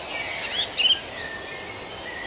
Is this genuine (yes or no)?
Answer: yes